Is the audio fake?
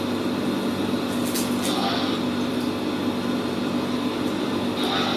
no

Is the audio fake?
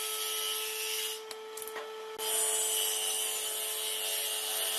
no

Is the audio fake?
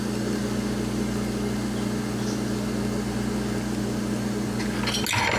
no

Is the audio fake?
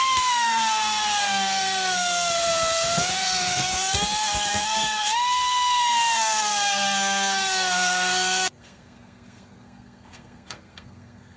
yes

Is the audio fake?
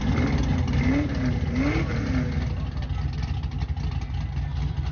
no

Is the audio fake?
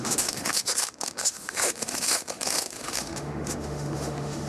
yes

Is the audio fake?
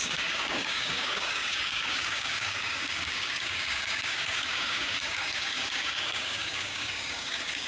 yes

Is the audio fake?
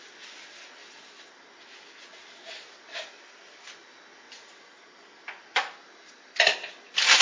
no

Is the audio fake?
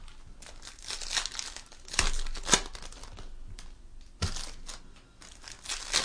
no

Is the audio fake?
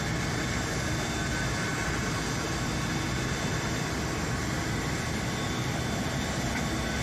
no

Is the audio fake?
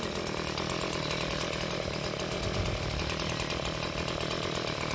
no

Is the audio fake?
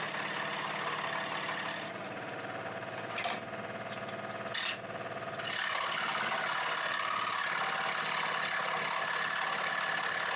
no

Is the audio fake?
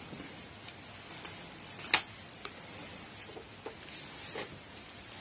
no